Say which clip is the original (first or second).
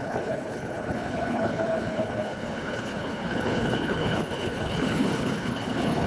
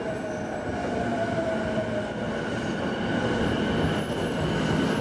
second